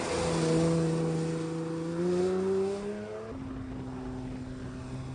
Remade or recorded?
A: recorded